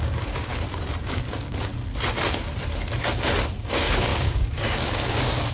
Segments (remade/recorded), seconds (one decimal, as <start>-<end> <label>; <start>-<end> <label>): 0.0-0.5 remade; 0.5-1.0 recorded; 1.0-1.7 remade; 1.7-3.6 recorded; 3.6-5.5 remade